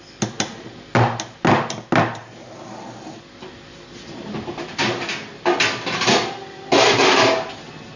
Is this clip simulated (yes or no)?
no